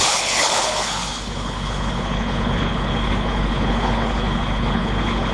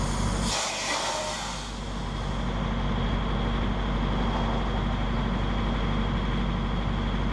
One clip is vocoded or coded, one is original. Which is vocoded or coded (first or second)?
first